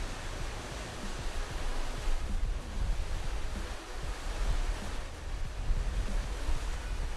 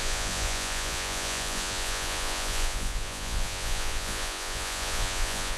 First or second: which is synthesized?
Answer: second